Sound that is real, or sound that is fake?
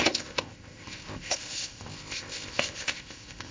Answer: fake